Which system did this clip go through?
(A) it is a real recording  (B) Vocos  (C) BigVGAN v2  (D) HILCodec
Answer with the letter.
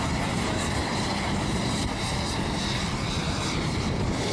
A